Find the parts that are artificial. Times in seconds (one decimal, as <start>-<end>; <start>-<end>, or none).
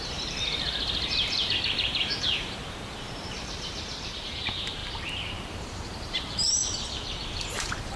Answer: 0.0-6.6; 7.3-8.0